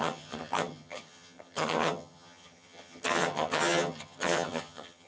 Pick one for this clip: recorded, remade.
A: remade